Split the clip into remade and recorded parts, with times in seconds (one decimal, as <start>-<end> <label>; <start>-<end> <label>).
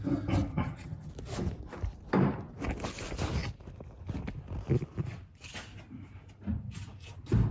0.0-0.5 recorded; 0.5-1.1 remade; 1.1-7.5 recorded